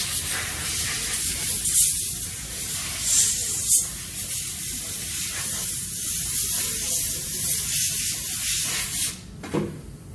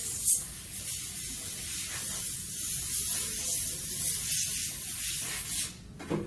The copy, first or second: first